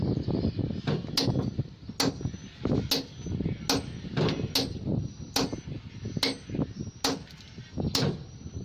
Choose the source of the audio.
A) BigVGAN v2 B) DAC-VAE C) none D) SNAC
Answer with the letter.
C